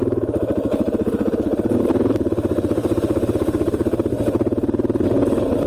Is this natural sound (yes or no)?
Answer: yes